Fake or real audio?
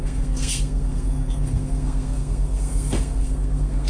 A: fake